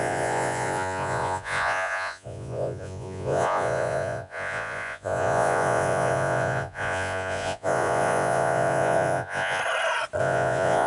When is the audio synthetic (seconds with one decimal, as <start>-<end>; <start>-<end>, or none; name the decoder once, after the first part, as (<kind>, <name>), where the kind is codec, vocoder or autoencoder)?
0.0-9.6 (vocoder, Vocos); 10.2-10.9